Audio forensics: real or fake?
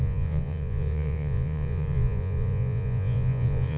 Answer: fake